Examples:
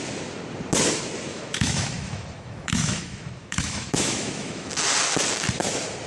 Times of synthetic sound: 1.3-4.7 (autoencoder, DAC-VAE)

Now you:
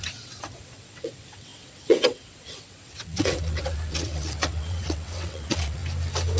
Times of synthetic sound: 0.0-5.8 (vocoder, WaveNeXt)

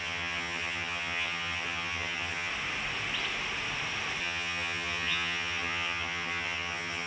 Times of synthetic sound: 0.0-2.5 (vocoder, HiFi-GAN); 4.2-7.1

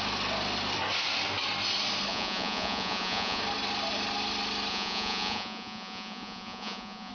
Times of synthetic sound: 2.1-3.4 (vocoder, Vocos); 4.7-7.1